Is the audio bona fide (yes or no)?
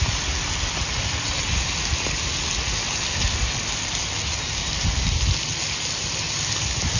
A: yes